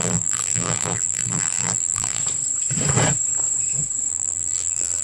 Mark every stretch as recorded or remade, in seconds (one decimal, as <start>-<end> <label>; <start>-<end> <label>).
0.0-2.2 remade; 2.2-4.1 recorded; 4.1-5.0 remade